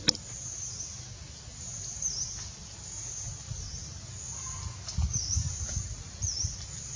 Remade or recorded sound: recorded